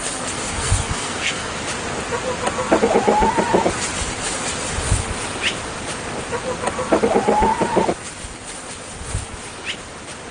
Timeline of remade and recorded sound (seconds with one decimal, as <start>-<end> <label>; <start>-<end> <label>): 0.0-1.5 remade; 1.5-10.3 recorded